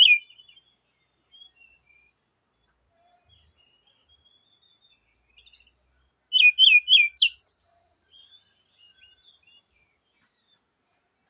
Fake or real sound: real